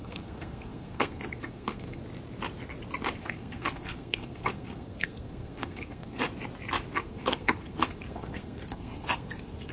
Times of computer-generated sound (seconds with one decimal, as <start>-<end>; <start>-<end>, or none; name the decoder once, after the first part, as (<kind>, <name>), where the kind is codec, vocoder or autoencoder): 0.0-2.0 (codec, SNAC); 3.2-6.2; 7.0-9.7